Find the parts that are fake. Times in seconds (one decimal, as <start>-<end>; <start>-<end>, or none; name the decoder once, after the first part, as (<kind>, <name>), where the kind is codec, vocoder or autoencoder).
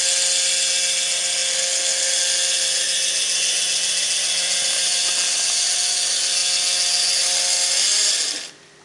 none